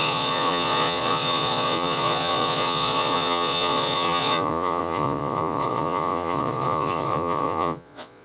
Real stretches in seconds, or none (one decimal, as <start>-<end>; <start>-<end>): none